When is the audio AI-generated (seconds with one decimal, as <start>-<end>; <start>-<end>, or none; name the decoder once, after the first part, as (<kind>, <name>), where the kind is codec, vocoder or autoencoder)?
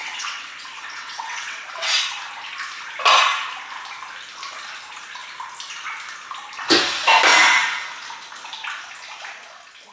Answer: 0.0-2.0 (vocoder, WaveNeXt)